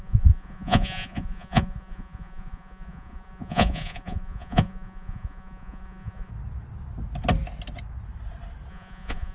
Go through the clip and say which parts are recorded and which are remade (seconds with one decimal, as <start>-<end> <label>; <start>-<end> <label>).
0.0-6.3 remade; 6.3-8.7 recorded; 8.7-9.3 remade